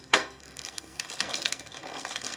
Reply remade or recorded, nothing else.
remade